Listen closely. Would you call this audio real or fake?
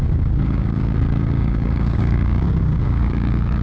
fake